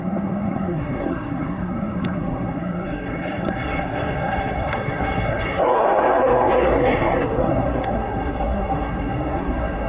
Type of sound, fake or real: fake